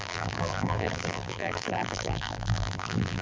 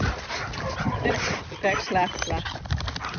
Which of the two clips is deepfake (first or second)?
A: first